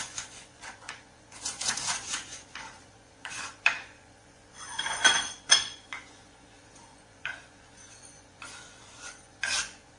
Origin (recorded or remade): remade